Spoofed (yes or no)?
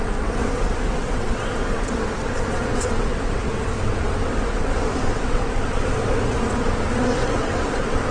yes